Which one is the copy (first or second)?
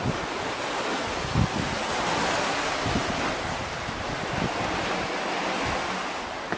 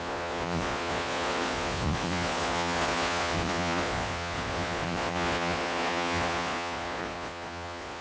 second